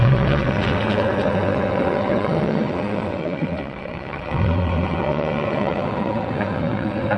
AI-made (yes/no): yes